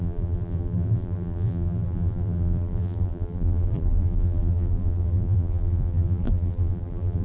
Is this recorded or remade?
remade